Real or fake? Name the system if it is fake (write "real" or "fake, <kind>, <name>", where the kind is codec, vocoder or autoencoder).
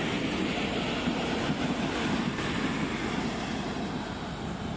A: real